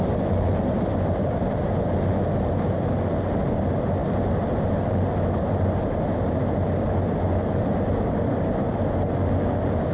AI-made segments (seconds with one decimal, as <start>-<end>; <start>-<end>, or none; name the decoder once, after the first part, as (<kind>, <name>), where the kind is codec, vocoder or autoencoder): none